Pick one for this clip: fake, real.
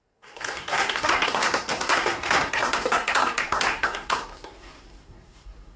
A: fake